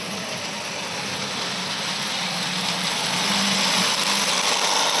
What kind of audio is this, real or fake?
real